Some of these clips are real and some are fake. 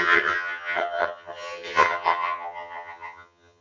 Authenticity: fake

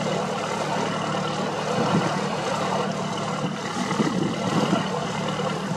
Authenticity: real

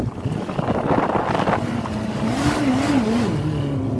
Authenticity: real